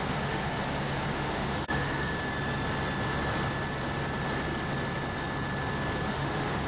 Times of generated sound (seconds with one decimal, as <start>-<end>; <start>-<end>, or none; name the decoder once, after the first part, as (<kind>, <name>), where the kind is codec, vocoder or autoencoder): 0.0-0.4 (autoencoder, DAC-VAE); 1.1-2.1; 6.1-6.7